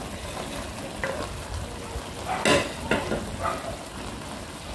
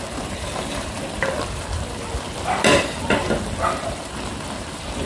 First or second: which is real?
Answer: first